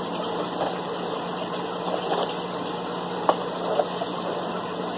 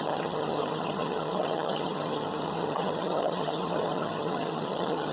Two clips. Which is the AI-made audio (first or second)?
second